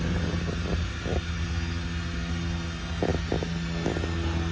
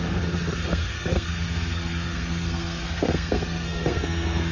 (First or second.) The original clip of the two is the first